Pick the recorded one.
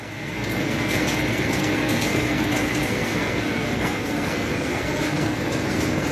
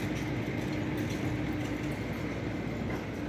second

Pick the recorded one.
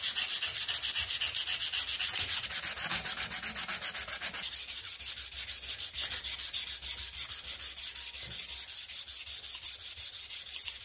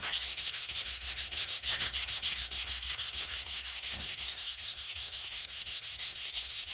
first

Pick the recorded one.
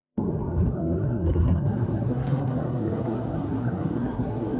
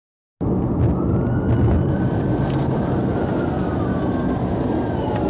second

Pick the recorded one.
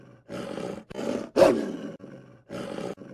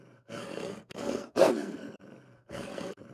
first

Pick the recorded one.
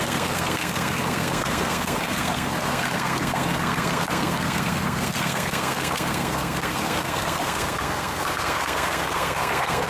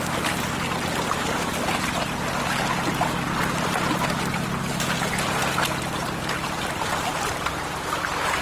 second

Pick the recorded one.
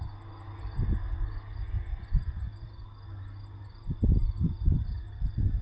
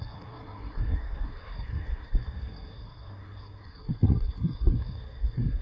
first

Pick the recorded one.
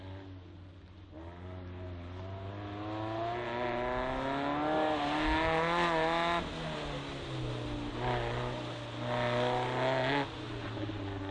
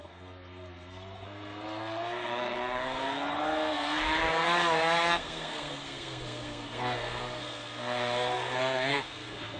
first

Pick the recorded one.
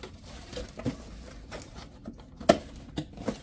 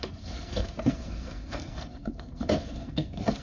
first